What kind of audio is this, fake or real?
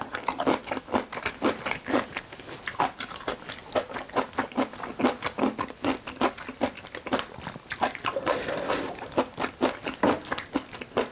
real